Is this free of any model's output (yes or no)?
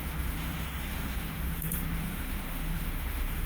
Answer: no